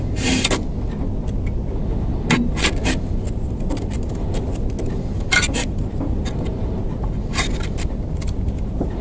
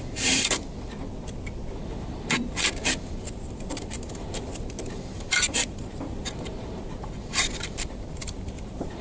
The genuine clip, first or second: first